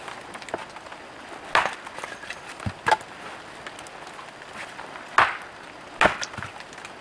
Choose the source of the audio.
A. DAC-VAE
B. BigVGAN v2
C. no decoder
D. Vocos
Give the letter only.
C